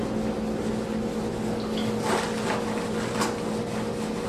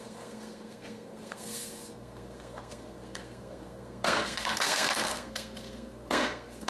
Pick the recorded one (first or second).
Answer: first